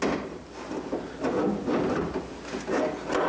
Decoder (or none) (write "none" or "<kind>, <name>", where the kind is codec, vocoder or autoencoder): none